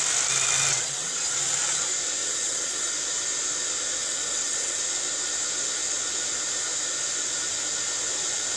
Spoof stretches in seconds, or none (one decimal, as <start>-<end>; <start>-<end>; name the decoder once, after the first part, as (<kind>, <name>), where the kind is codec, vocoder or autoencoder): 0.7-1.4 (vocoder, WaveNeXt); 2.2-2.9; 4.0-4.8